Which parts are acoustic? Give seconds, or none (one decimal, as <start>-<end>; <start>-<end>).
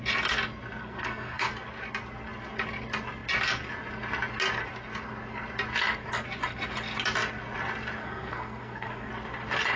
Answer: 0.0-0.8; 1.5-8.0; 9.1-9.8